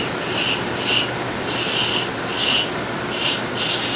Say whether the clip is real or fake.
real